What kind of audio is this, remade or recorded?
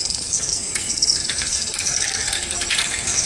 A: remade